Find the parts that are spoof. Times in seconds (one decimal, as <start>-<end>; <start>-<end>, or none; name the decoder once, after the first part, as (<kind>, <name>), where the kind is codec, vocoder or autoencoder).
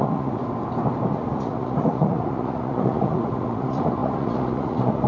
0.0-0.4 (vocoder, Vocos); 1.1-5.1